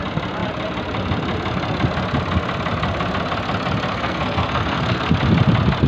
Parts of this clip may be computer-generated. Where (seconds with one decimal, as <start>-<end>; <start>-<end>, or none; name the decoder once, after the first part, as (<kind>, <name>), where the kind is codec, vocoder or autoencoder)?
3.9-5.1 (codec, SNAC)